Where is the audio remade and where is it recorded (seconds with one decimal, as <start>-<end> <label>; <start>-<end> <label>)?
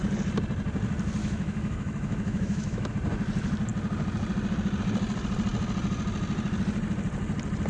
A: 0.0-1.2 recorded; 1.2-2.9 remade; 2.9-7.7 recorded